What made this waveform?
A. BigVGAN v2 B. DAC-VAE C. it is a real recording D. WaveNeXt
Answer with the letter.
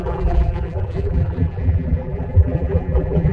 A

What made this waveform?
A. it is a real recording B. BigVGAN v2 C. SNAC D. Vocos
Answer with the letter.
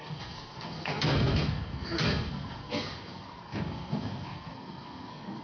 C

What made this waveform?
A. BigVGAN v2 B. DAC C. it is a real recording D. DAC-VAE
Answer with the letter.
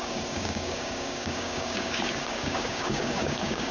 B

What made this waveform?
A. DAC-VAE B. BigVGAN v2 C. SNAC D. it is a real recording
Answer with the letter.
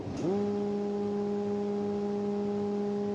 D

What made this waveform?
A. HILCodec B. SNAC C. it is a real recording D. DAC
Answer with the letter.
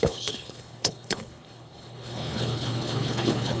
A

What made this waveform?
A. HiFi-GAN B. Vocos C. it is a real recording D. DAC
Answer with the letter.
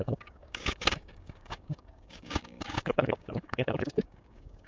D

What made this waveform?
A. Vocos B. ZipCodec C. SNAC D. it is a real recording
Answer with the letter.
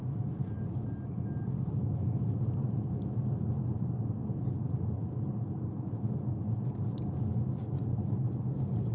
D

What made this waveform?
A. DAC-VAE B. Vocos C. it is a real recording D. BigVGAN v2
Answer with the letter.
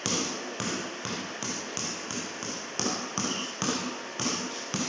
D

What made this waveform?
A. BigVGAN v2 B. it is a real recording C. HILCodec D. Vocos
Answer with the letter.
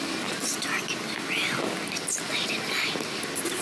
B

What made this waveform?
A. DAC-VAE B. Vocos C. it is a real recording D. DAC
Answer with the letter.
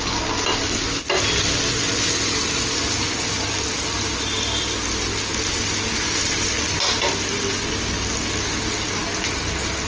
C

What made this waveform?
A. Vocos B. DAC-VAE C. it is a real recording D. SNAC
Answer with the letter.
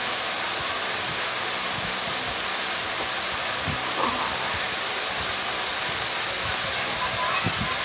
C